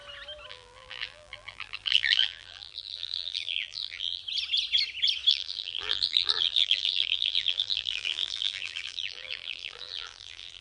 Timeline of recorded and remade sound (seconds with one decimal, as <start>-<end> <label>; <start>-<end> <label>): 0.0-0.5 recorded; 0.5-4.2 remade; 4.2-5.3 recorded; 5.3-10.6 remade